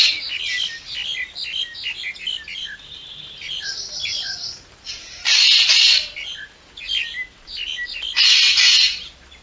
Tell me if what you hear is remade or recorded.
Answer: recorded